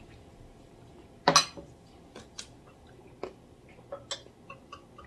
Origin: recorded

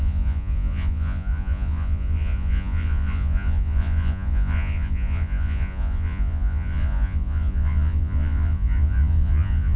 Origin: remade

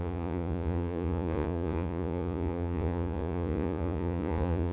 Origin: remade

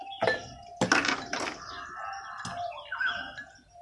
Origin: recorded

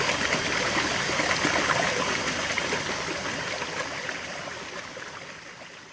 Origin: recorded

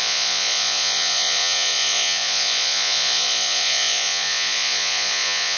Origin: remade